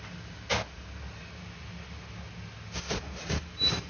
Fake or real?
real